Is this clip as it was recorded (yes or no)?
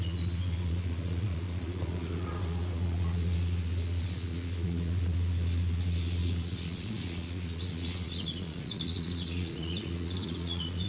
no